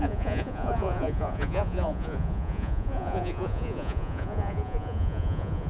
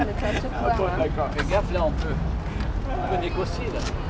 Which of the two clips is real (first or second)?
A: second